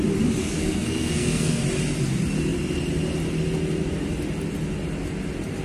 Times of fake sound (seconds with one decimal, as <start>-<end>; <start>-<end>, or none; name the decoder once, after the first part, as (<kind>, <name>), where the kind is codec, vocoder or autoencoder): 0.4-1.6 (codec, SNAC)